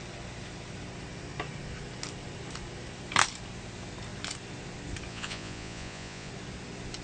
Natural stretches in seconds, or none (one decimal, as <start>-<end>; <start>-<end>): 0.0-5.1; 6.3-7.0